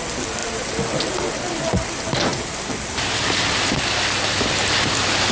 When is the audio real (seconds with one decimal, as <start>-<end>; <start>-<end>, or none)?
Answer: 0.0-5.3